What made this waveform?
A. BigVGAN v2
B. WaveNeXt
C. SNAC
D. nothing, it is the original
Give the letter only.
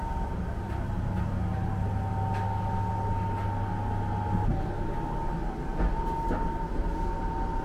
D